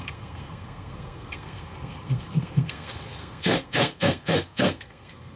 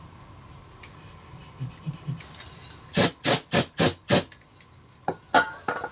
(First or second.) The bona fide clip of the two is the second